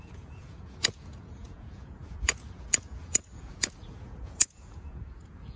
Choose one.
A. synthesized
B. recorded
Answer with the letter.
A